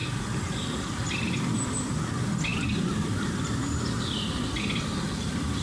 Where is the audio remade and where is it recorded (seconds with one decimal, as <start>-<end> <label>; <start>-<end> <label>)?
0.0-1.9 remade; 1.9-2.5 recorded; 2.5-3.5 remade; 3.5-5.6 recorded